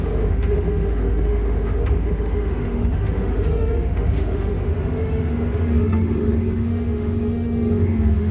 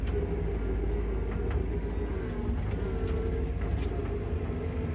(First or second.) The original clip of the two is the second